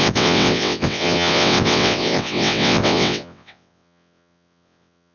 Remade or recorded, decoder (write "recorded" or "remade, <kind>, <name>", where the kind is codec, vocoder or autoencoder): remade, vocoder, WaveNeXt